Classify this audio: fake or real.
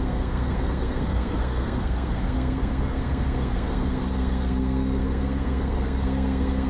fake